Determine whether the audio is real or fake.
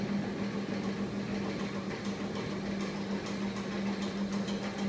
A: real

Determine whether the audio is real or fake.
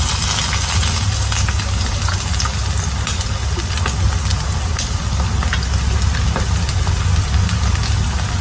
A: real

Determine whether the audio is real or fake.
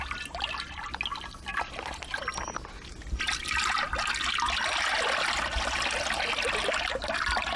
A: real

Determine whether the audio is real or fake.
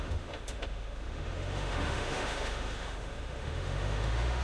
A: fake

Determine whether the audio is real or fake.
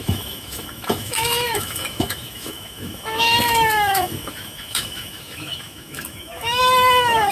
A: fake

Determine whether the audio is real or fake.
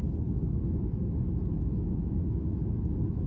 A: fake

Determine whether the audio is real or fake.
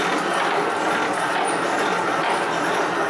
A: real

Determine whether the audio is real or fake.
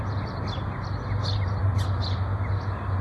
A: real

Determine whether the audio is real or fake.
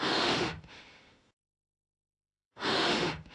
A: fake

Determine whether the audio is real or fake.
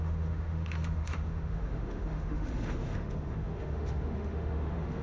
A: fake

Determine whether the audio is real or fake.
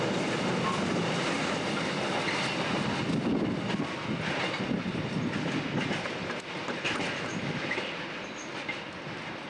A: real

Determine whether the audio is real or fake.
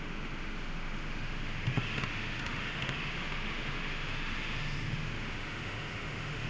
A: fake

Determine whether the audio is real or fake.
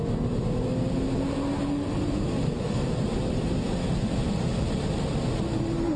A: real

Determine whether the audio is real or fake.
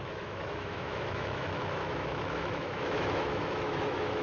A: fake